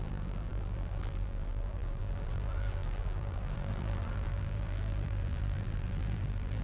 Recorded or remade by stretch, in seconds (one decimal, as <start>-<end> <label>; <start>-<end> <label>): 0.0-6.6 remade